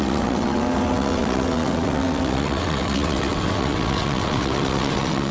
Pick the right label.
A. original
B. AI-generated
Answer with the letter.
B